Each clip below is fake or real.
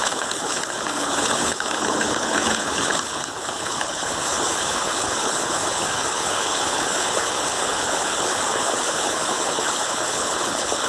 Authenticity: fake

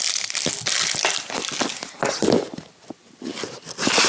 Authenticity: real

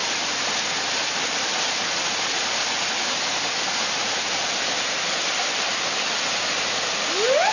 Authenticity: real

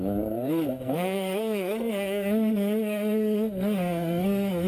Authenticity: fake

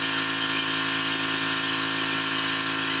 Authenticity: real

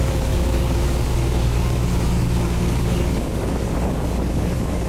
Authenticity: fake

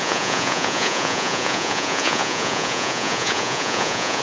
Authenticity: fake